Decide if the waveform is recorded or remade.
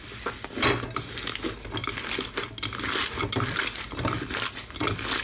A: recorded